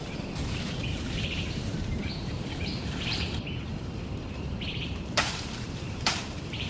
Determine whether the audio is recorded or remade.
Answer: remade